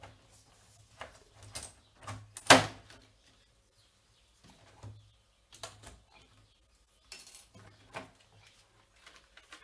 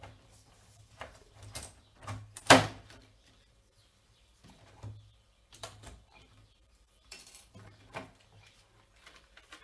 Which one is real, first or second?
first